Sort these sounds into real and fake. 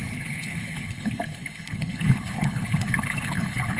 fake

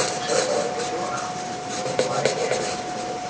real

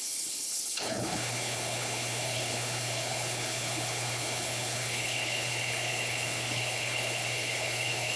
fake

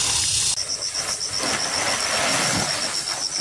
real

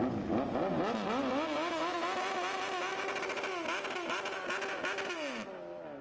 real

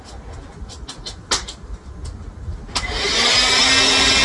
real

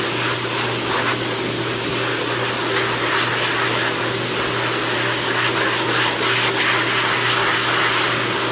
real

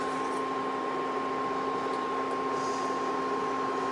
real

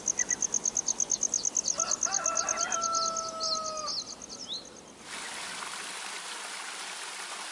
real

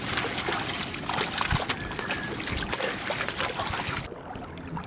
real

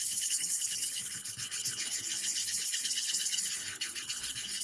fake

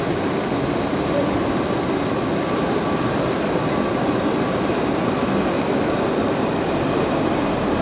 real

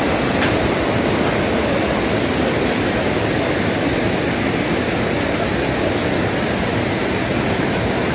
real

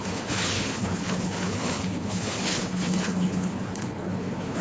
fake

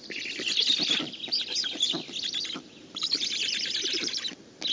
real